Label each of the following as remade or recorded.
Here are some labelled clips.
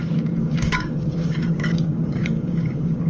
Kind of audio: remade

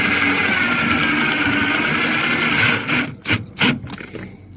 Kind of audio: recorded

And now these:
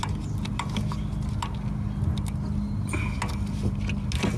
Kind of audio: recorded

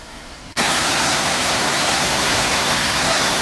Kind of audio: remade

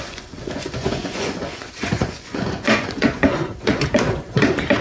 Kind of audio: remade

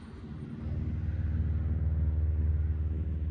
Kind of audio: recorded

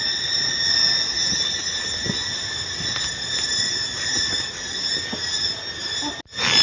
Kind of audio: recorded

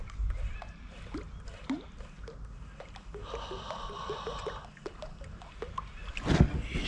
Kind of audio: recorded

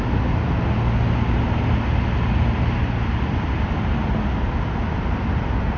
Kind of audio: recorded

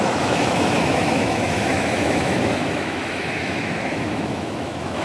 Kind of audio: remade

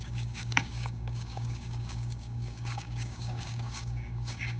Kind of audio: remade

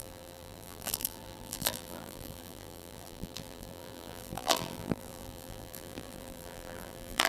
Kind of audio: remade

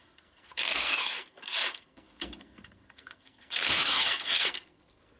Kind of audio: remade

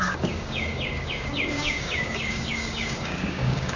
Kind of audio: remade